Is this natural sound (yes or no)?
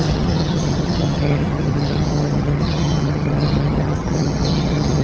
no